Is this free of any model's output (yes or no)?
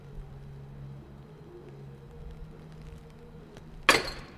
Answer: yes